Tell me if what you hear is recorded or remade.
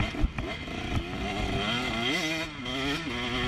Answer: recorded